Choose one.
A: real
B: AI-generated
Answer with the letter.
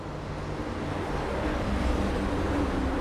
A